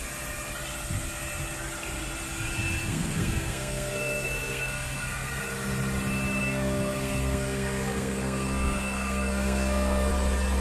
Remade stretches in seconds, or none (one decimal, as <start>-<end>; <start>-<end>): 2.9-5.4; 6.4-10.1